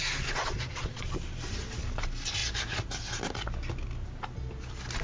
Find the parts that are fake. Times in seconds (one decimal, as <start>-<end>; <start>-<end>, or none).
0.4-1.1